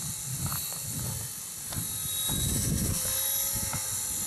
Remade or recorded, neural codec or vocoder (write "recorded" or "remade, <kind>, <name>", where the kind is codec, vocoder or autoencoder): recorded